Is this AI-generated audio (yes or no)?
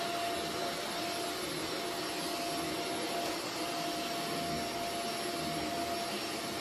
no